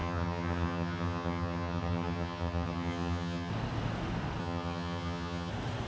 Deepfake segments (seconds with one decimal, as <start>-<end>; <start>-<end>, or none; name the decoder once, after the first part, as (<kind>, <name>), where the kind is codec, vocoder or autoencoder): 0.0-3.5 (vocoder, HiFi-GAN); 4.4-5.5